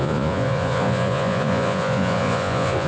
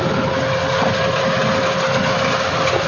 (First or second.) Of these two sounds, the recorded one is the second